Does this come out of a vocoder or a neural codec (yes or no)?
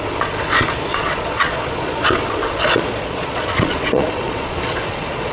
yes